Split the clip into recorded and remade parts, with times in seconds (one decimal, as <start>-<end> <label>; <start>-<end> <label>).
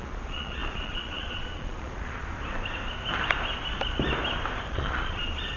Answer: 0.0-2.3 remade; 2.3-4.7 recorded; 4.7-5.6 remade